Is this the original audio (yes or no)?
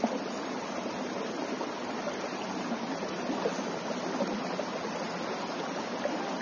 yes